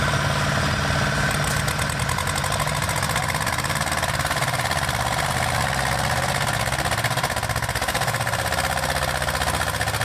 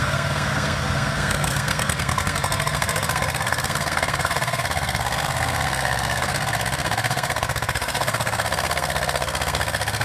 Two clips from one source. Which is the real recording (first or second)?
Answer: first